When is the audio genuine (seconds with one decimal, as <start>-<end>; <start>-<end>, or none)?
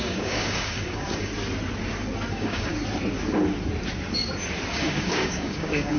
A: 1.3-2.3; 2.7-4.7